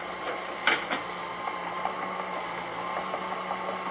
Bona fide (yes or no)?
yes